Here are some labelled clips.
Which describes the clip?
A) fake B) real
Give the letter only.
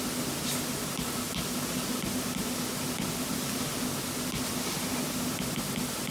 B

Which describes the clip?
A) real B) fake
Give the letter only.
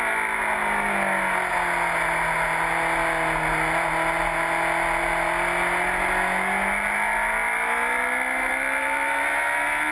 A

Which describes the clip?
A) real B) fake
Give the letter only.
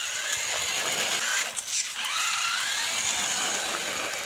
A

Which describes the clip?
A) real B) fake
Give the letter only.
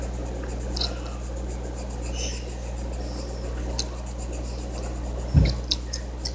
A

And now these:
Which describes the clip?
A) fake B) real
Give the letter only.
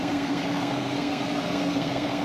A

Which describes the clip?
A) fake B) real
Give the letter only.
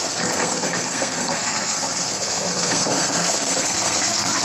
A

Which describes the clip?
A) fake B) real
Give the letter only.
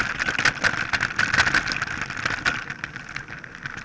B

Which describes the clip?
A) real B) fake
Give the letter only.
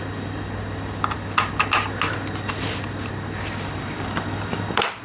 A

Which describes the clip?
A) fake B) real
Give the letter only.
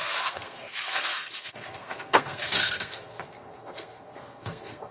A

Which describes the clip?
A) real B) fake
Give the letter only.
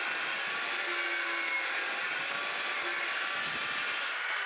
A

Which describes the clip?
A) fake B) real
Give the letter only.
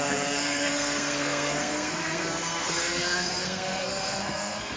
A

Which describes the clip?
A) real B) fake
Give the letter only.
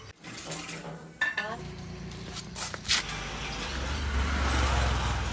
A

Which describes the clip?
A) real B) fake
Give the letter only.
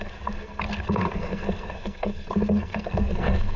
B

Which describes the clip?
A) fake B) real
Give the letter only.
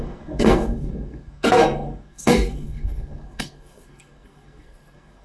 A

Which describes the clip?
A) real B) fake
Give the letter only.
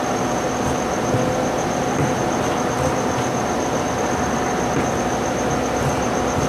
A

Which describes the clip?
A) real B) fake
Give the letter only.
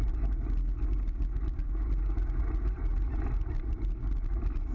A